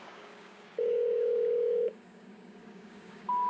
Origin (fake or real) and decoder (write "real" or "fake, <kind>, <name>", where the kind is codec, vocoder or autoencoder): fake, codec, DAC